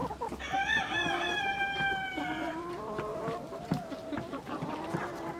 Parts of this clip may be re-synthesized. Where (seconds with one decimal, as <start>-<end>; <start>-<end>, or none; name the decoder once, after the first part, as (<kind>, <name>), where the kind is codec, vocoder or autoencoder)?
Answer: 1.4-3.1 (vocoder, BigVGAN v2); 3.6-5.4